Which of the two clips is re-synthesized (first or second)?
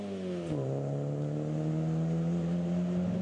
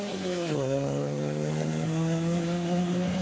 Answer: second